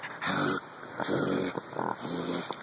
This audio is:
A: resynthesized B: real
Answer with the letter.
B